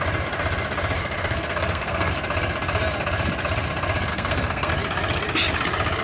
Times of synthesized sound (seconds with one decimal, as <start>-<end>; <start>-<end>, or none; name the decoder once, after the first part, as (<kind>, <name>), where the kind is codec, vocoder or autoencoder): 1.0-2.1 (codec, SNAC); 4.1-4.7